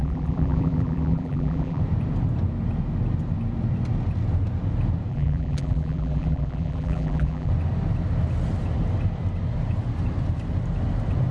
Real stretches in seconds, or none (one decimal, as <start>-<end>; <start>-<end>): 1.8-5.1; 7.5-11.3